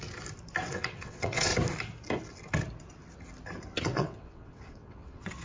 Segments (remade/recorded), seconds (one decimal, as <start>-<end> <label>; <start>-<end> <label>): 0.0-0.7 recorded; 0.7-1.5 remade; 1.5-3.8 recorded; 3.8-5.4 remade